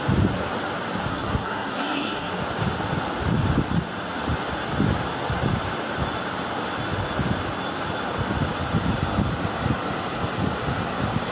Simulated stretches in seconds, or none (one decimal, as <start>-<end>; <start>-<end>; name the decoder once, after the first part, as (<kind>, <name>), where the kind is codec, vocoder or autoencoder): 1.1-2.3 (codec, SNAC)